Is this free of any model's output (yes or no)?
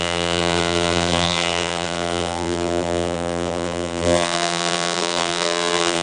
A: no